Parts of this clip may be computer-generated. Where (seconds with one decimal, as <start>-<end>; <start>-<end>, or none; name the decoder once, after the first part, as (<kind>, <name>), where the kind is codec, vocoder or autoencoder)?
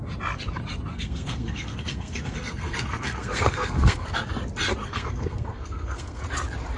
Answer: 0.9-4.3 (codec, SNAC); 4.8-6.2